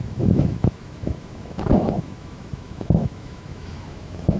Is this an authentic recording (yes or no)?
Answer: no